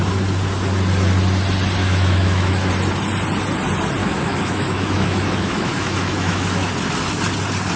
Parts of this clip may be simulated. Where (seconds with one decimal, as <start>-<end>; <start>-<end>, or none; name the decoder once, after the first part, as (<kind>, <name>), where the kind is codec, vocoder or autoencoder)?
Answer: 1.8-2.7 (autoencoder, DAC-VAE); 4.0-6.7